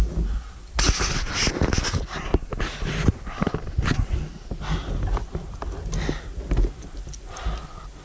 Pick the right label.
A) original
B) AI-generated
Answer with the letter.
A